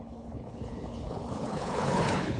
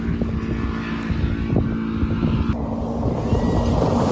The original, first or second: second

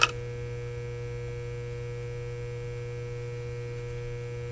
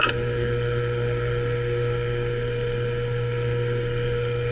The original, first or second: first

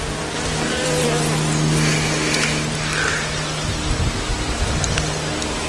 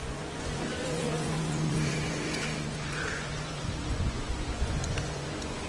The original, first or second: first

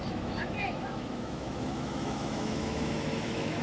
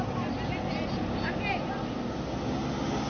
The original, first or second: second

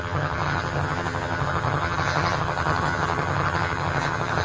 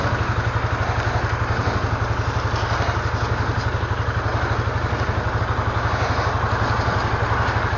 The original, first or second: second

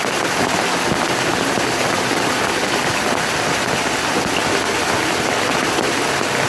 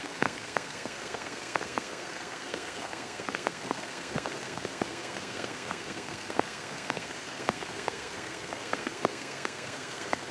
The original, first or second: first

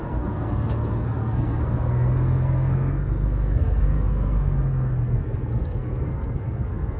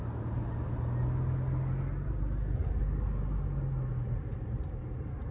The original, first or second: second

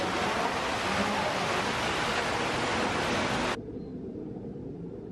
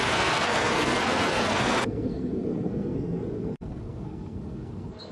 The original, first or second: first